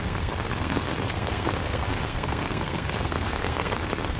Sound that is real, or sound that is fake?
fake